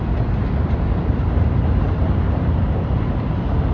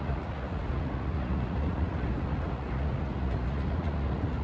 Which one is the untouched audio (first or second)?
first